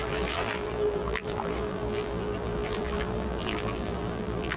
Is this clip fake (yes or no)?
yes